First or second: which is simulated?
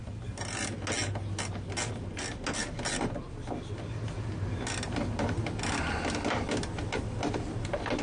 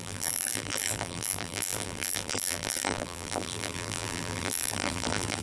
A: second